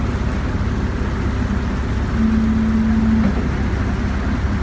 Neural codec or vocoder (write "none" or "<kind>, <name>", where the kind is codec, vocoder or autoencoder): none